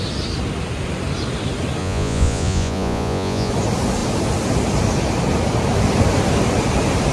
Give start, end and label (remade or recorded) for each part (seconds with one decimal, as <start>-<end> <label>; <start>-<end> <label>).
0.0-1.8 recorded; 1.8-3.5 remade; 3.5-7.1 recorded